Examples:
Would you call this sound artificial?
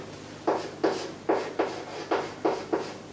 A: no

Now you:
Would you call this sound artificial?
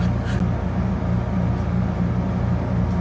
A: no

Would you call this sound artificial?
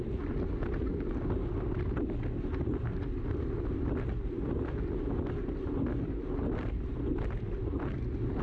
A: no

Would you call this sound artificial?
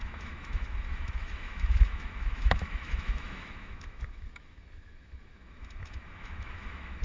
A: yes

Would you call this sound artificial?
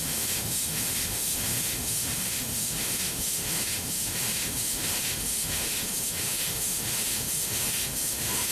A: yes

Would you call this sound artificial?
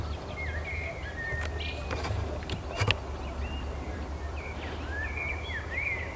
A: no